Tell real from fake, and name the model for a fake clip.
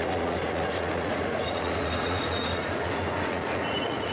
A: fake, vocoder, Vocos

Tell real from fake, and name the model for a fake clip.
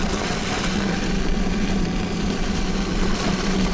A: real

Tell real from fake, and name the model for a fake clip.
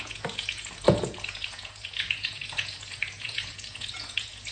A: fake, vocoder, Vocos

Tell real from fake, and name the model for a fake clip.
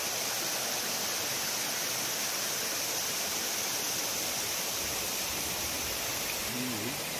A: real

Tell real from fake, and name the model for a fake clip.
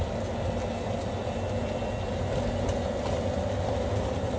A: real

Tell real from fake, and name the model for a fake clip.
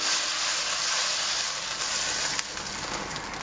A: real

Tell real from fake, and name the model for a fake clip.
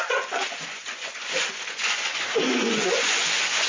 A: fake, vocoder, Vocos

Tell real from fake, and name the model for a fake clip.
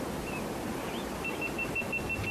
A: real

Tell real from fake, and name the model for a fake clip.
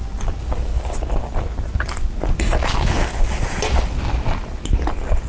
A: real